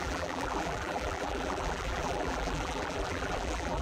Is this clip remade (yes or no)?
yes